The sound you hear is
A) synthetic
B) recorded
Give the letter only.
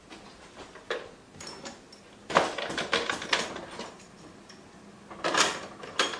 B